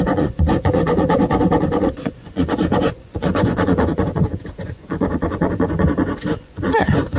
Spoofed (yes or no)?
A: yes